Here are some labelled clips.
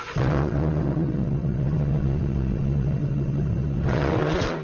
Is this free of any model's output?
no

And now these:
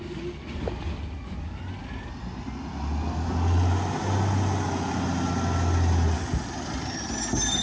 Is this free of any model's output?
yes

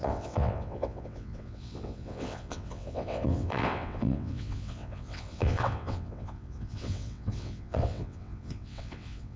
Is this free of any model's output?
no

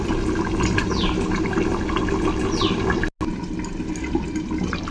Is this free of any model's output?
yes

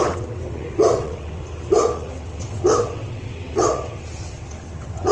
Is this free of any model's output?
no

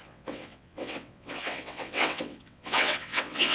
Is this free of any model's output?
no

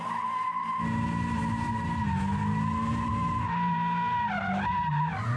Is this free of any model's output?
yes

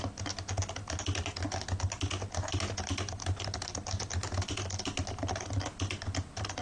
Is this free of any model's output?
yes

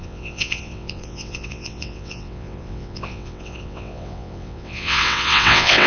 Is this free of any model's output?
no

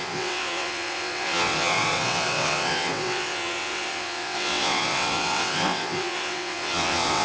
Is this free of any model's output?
no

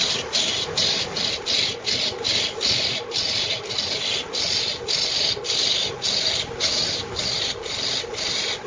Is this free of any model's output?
yes